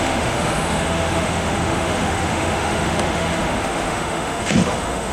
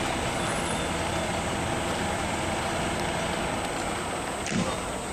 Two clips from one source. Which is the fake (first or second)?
first